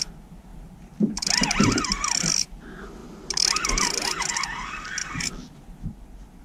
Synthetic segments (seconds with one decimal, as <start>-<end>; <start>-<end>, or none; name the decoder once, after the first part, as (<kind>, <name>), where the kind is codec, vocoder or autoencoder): none